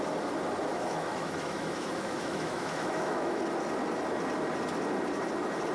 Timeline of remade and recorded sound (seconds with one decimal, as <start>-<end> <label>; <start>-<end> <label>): 0.0-0.7 recorded; 0.7-3.4 remade; 3.4-5.7 recorded